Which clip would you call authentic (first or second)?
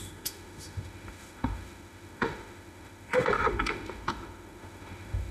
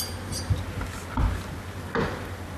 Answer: second